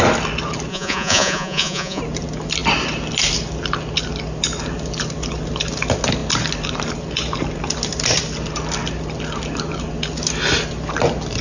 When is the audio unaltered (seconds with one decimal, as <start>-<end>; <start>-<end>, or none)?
0.0-0.7; 2.0-11.4